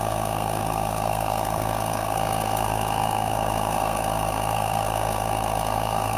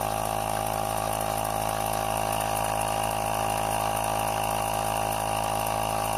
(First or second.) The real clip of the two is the second